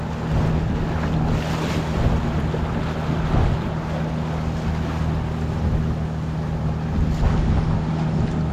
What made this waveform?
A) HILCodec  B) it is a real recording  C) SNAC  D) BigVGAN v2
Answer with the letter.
B